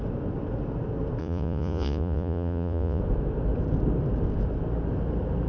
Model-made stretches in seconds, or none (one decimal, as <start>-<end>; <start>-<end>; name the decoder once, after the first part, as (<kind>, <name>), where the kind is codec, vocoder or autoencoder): 1.2-3.0 (vocoder, Vocos)